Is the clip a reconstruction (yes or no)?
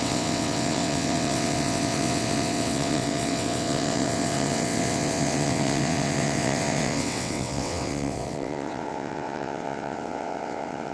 yes